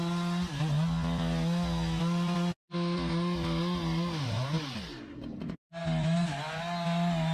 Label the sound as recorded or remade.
recorded